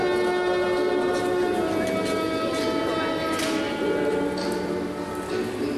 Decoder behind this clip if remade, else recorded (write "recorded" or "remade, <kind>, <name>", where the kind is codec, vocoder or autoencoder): recorded